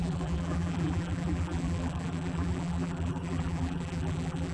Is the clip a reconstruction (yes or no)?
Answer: yes